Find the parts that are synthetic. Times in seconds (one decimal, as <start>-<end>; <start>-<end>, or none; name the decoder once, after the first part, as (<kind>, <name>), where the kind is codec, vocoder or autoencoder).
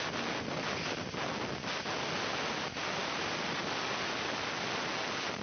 3.0-3.6 (vocoder, BigVGAN v2)